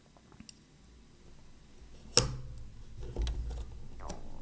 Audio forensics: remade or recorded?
recorded